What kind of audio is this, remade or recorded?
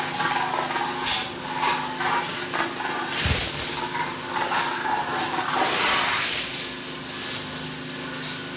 recorded